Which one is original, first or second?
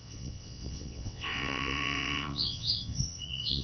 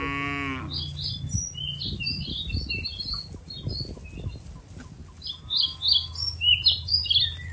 second